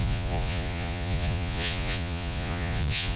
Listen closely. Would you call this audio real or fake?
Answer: fake